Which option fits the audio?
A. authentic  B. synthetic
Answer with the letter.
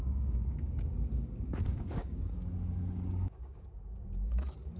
B